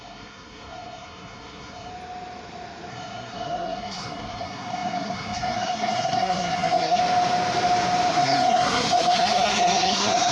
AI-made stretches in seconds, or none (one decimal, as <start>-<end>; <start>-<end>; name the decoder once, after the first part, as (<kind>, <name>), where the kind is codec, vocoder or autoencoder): 0.0-1.9 (codec, SNAC); 2.9-7.0; 8.1-10.3